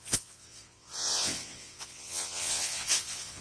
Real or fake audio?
fake